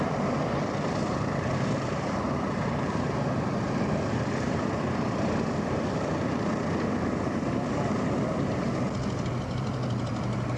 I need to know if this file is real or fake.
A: fake